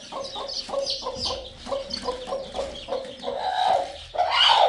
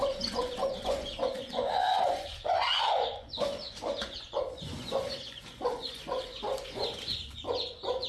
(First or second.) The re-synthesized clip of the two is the second